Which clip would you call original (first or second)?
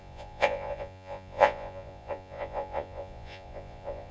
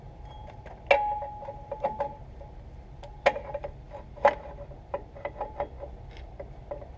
second